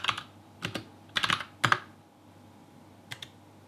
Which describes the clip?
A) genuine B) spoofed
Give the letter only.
A